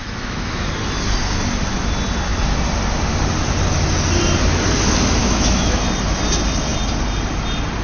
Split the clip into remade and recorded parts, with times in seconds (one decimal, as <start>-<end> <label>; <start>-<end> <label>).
0.0-0.7 remade; 0.7-5.2 recorded; 5.2-5.8 remade; 5.8-7.8 recorded